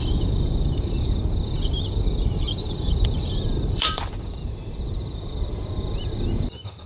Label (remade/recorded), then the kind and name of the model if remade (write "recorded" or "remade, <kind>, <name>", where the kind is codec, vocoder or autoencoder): remade, vocoder, BigVGAN v2